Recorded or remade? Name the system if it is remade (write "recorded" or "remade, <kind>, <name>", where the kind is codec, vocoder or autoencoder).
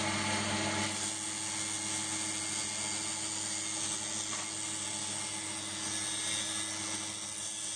recorded